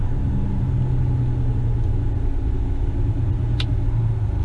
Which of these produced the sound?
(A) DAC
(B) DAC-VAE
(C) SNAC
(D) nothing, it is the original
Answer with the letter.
D